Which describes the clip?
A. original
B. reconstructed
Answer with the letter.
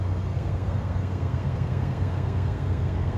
B